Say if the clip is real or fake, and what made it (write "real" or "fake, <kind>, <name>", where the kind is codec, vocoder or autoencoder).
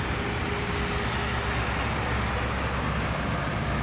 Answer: real